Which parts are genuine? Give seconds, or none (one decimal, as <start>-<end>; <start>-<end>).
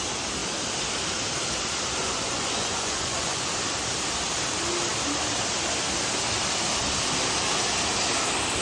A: 0.0-2.0; 3.5-8.6